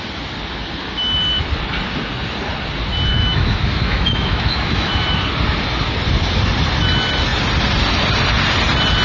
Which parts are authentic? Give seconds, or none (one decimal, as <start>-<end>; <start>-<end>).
0.0-3.1; 4.9-9.0